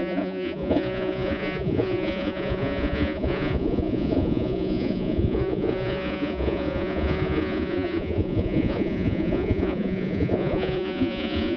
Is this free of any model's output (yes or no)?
no